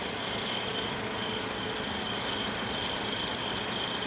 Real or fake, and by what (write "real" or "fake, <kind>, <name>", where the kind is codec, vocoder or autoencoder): real